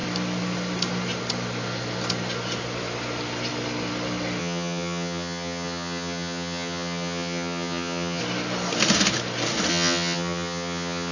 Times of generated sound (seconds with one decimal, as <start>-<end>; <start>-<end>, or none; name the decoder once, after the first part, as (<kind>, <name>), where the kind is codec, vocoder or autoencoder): 4.4-8.2 (vocoder, HiFi-GAN); 9.7-11.1